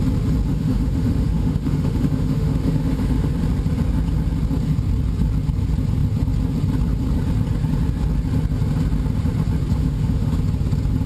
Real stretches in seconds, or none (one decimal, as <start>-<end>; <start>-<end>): 0.0-0.5; 3.3-9.8; 10.4-11.1